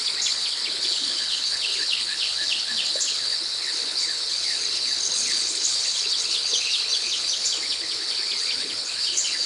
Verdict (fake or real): fake